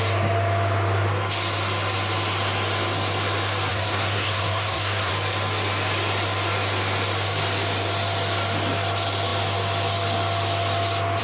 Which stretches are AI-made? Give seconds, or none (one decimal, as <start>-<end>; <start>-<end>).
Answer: 3.7-5.1